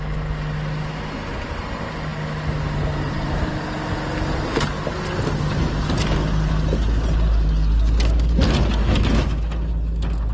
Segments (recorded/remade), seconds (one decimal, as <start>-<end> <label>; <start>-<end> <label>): 0.0-8.8 recorded; 8.8-9.7 remade; 9.7-10.3 recorded